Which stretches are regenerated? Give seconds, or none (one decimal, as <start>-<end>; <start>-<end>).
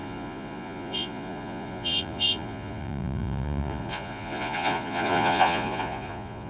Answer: 0.0-6.5